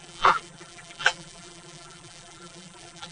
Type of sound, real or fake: fake